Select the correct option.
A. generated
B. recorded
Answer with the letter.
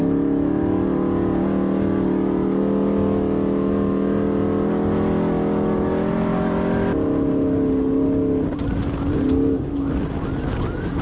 B